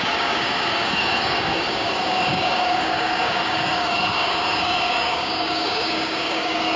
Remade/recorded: remade